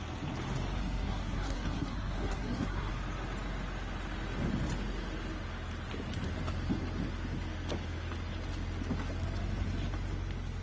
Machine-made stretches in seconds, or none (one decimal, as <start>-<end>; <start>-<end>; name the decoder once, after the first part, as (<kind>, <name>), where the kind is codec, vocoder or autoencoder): 0.8-2.9 (codec, SNAC)